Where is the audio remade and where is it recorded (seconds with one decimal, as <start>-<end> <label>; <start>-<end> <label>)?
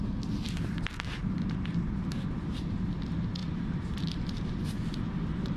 0.0-1.1 recorded; 1.1-2.8 remade; 2.8-3.4 recorded; 3.4-4.6 remade; 4.6-5.6 recorded